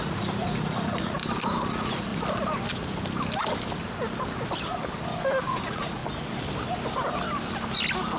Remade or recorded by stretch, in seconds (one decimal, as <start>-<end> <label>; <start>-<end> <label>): 0.0-1.2 remade; 1.2-1.7 recorded; 1.7-2.1 remade; 2.1-5.4 recorded; 5.4-6.0 remade; 6.0-8.2 recorded